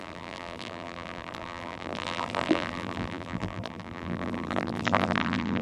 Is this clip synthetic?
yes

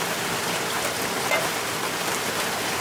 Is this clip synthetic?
no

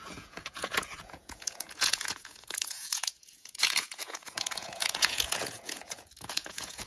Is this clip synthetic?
yes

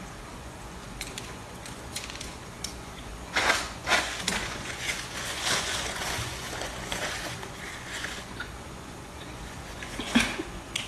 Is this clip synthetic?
yes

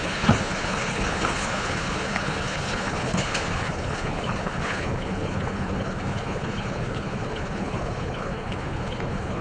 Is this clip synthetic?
yes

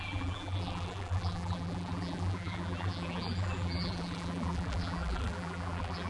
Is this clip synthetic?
yes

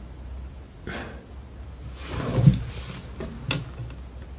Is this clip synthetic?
no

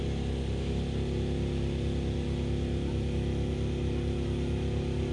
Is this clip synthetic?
no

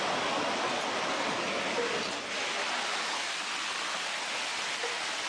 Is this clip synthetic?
no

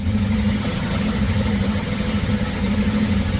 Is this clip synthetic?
yes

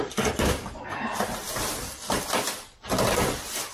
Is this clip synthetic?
no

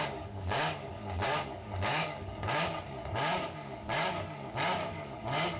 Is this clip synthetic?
yes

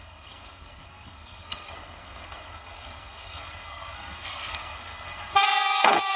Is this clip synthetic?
yes